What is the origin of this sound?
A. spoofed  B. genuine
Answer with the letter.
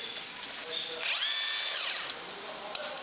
B